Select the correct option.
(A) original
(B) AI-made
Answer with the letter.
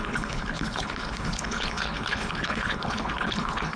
B